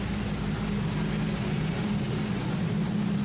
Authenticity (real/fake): real